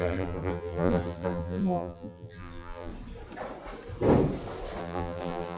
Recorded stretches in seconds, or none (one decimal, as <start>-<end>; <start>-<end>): 2.9-4.8